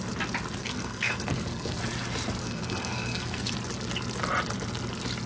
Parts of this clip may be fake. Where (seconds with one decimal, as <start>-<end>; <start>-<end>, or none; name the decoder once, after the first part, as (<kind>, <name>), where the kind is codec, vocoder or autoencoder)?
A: 0.6-1.8 (codec, SNAC); 2.4-3.5